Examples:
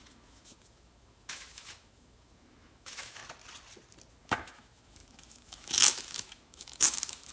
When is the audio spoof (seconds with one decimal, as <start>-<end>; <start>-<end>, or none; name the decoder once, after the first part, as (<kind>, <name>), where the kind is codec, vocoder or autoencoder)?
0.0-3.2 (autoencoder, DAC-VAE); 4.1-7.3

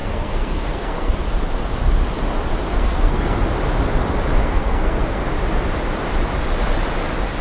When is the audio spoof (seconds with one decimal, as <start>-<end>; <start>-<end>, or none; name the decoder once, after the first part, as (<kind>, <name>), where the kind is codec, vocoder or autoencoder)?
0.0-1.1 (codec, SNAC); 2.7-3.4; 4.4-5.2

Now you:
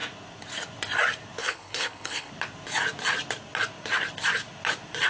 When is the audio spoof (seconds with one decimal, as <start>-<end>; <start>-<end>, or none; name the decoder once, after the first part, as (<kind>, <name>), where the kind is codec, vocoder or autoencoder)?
1.4-2.3 (codec, HILCodec)

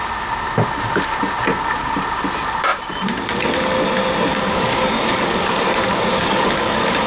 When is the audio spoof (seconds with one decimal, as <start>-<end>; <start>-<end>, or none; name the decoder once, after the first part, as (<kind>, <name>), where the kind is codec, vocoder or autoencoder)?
4.3-7.1 (codec, DAC)

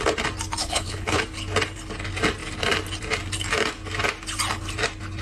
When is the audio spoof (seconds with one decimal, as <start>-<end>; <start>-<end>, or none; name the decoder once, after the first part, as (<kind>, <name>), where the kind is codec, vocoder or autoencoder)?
0.6-1.2 (codec, HILCodec)

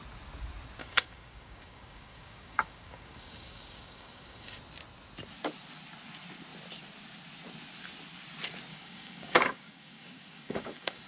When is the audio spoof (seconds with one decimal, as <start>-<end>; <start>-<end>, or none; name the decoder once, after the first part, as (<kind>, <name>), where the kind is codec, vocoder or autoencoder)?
0.8-4.6 (codec, DAC); 8.7-11.1